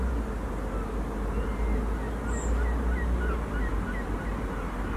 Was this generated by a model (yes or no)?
no